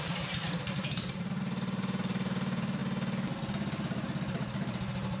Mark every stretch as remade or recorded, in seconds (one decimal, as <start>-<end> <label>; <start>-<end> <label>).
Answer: 0.0-2.8 remade; 2.8-5.2 recorded

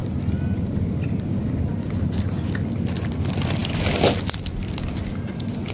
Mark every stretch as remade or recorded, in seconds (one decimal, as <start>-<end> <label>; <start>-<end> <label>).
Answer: 0.0-5.7 recorded

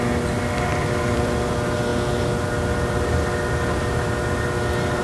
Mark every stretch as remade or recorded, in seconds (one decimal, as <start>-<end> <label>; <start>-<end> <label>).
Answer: 0.0-0.7 recorded; 0.7-1.4 remade; 1.4-5.0 recorded